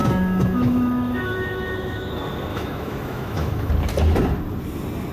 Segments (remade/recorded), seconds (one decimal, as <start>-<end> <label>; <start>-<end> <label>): 0.0-2.1 remade; 2.1-2.5 recorded; 2.5-3.7 remade; 3.7-5.1 recorded